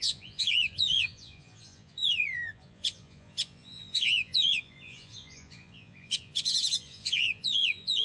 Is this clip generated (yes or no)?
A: yes